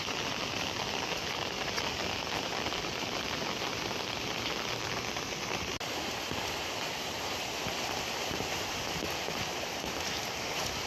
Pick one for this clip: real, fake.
real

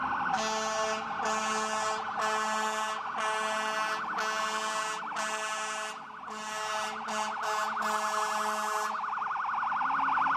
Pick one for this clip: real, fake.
real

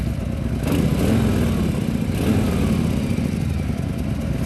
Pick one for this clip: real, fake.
real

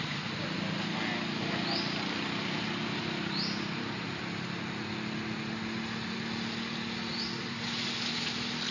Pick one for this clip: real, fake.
real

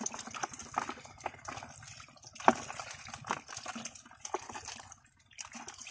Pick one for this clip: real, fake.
real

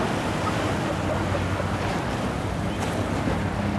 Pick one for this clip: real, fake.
real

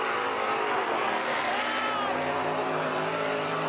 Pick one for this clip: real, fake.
fake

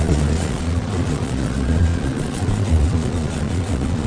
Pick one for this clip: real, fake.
fake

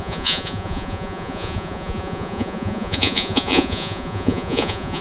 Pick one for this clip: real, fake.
fake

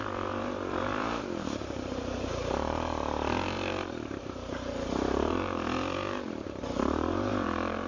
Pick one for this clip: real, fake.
fake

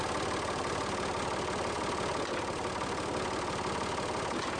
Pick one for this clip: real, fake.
real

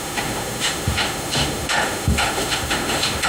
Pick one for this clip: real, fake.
fake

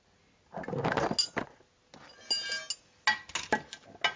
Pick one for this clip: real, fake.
real